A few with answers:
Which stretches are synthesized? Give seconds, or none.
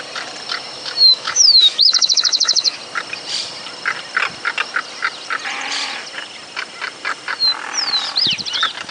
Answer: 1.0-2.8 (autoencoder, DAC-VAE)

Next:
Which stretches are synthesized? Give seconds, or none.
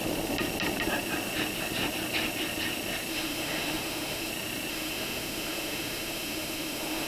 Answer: 3.1-4.3 (autoencoder, DAC-VAE); 4.7-7.1